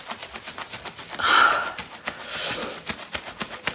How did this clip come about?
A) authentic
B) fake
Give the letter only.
A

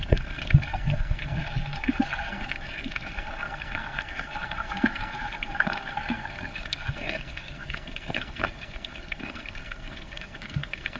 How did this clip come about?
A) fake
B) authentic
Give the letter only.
A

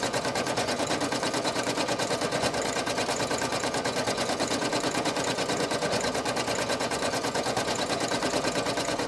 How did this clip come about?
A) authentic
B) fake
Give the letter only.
B